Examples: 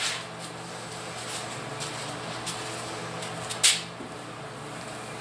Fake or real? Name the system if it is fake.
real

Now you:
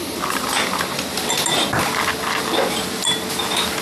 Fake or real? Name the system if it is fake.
real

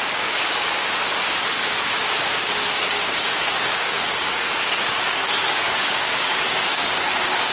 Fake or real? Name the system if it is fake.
fake, codec, DAC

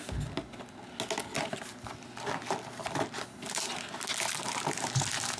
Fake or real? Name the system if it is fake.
real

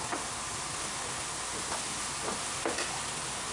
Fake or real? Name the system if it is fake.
real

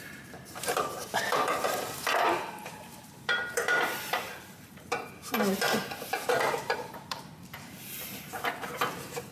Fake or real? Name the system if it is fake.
fake, vocoder, BigVGAN v2